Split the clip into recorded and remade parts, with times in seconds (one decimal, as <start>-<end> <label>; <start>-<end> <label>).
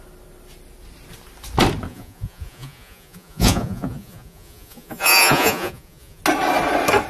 0.0-1.9 recorded; 1.9-6.2 remade; 6.2-7.1 recorded